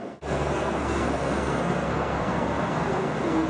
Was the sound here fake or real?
fake